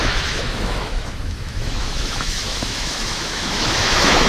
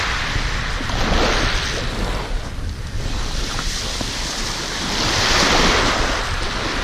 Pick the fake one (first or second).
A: first